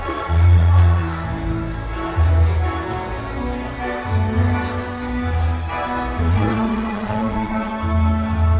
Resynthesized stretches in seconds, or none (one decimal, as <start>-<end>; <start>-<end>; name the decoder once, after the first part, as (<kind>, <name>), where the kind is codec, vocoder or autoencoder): 0.0-1.0 (vocoder, Vocos); 6.2-7.7